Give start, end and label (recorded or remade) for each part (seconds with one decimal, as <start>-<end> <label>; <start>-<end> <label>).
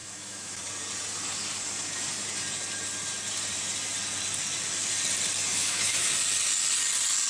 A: 0.0-0.6 remade; 0.6-5.5 recorded; 5.5-6.1 remade; 6.1-7.3 recorded